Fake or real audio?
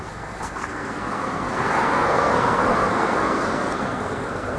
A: fake